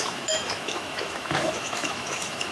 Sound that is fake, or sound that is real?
fake